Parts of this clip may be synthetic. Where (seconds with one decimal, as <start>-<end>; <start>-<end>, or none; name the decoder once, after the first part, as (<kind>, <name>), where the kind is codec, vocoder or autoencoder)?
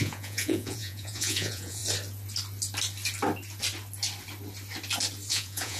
0.0-1.8 (vocoder, Vocos); 5.3-5.8